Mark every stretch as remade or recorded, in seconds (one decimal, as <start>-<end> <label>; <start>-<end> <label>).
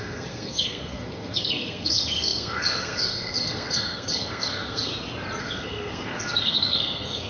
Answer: 0.0-4.9 remade; 4.9-5.4 recorded; 5.4-7.3 remade